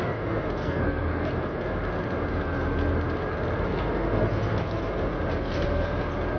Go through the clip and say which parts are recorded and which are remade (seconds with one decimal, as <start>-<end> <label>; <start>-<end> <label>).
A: 0.0-0.6 recorded; 0.6-1.3 remade; 1.3-6.4 recorded